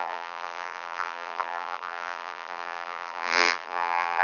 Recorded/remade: remade